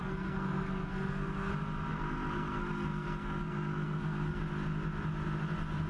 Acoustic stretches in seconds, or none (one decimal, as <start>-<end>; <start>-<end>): 1.5-1.9; 4.4-5.9